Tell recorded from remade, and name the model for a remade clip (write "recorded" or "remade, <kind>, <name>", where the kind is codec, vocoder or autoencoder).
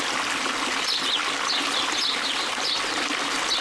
recorded